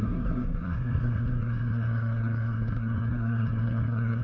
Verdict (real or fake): fake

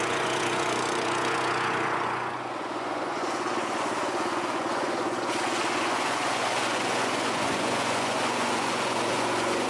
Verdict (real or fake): fake